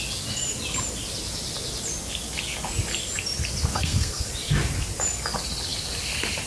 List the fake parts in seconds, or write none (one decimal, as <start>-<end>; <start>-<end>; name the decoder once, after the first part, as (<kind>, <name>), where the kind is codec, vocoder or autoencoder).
3.7-4.3 (codec, SNAC)